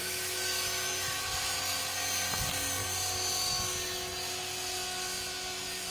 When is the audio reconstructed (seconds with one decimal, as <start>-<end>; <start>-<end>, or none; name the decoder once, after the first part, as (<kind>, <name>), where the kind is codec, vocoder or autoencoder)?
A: 0.0-1.8 (autoencoder, DAC-VAE)